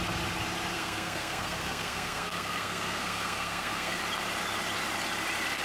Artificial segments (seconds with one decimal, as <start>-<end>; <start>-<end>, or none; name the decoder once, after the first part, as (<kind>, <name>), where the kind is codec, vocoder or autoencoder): 0.7-4.0 (codec, SNAC)

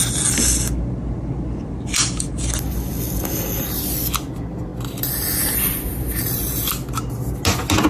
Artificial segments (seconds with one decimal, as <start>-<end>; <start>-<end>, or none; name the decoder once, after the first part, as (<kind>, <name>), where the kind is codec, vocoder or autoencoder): none

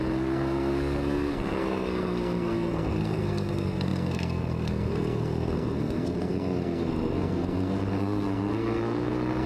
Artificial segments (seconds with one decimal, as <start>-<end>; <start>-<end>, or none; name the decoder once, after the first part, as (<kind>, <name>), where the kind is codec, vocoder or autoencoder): 0.0-9.5 (codec, SNAC)